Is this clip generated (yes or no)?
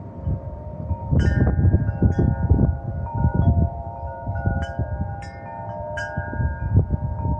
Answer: yes